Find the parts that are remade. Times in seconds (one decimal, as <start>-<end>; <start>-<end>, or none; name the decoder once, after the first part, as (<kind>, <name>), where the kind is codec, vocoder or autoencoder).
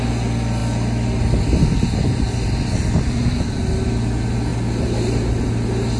none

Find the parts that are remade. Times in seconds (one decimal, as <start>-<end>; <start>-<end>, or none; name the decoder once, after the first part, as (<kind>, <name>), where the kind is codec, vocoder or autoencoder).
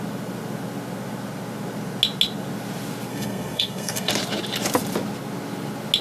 3.1-4.1 (codec, SNAC)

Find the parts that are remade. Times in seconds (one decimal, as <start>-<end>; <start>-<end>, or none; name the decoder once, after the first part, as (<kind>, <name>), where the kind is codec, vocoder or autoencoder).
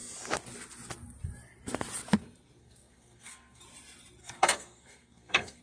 2.6-3.6 (codec, SNAC); 4.2-5.6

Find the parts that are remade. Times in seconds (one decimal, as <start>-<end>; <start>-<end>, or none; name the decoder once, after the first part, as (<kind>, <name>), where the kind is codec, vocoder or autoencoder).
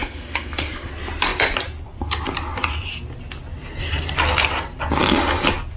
0.0-0.9 (codec, SNAC)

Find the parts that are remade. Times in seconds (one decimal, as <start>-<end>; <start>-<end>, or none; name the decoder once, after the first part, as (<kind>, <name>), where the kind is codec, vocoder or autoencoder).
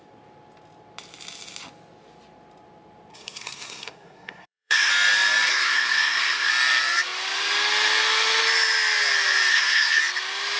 3.1-4.9 (codec, SNAC); 5.5-6.5; 9.5-10.0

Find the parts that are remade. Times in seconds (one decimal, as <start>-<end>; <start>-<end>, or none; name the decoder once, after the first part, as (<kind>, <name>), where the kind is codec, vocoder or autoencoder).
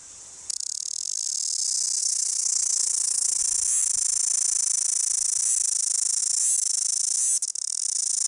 2.0-3.4 (codec, SNAC)